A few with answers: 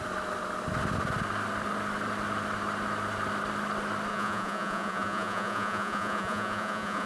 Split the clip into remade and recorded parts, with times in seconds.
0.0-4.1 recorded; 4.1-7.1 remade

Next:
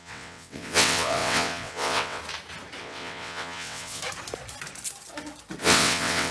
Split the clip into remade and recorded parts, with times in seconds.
0.0-2.2 remade; 2.2-2.8 recorded; 2.8-4.0 remade; 4.0-5.6 recorded; 5.6-6.3 remade

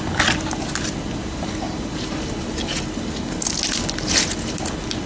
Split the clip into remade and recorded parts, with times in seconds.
0.0-5.1 recorded

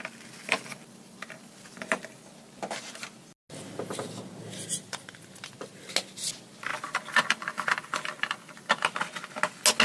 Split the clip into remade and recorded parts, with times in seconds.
0.0-0.4 recorded; 0.4-2.3 remade; 2.3-6.7 recorded; 6.7-8.7 remade; 8.7-9.8 recorded

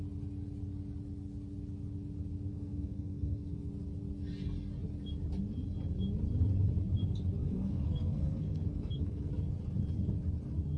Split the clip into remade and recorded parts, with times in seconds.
0.0-2.5 recorded; 2.5-3.7 remade; 3.7-7.4 recorded; 7.4-9.3 remade; 9.3-10.8 recorded

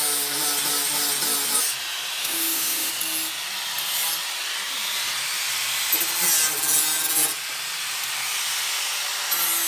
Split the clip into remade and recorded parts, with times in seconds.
0.0-2.2 recorded; 2.2-2.9 remade; 2.9-9.7 recorded